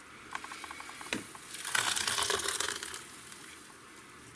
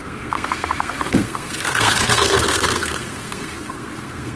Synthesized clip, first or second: second